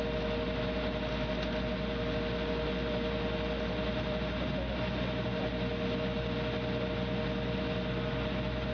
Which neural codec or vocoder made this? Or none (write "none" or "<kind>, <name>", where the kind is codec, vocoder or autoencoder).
none